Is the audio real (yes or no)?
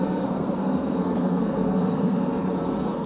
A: no